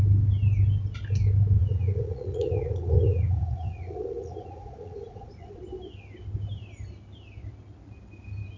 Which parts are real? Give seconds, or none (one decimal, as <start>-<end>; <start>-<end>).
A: 0.0-1.6; 5.6-8.6